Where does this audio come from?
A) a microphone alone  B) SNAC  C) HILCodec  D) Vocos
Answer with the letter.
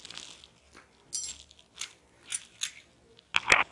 A